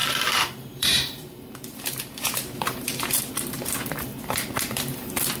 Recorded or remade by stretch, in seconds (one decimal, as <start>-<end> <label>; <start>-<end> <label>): 0.0-4.1 remade; 4.1-4.6 recorded; 4.6-5.4 remade